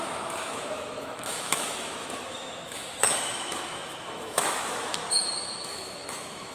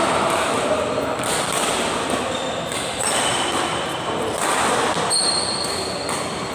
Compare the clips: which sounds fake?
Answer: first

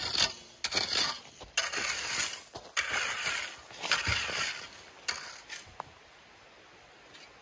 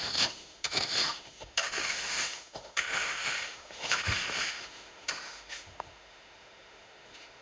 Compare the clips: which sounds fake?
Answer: second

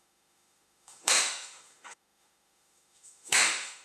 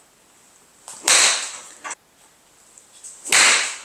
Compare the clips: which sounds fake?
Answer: first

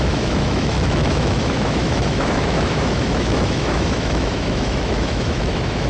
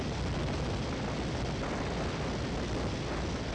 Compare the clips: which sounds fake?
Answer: first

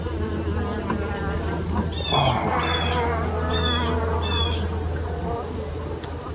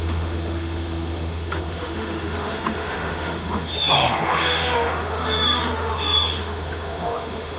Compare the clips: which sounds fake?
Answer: second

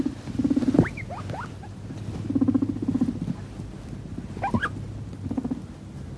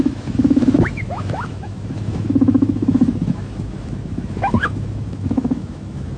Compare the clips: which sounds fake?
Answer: second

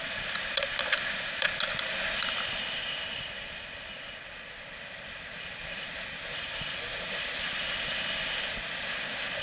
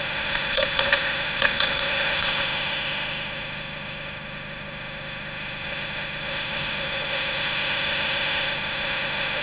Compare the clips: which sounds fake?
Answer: second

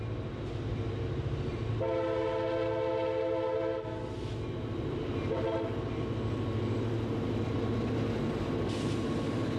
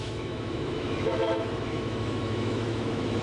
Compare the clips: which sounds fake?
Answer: second